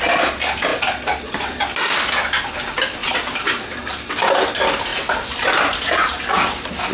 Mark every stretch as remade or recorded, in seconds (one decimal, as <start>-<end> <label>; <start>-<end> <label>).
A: 0.0-0.7 recorded; 0.7-1.6 remade; 1.6-3.0 recorded; 3.0-3.6 remade; 3.6-6.9 recorded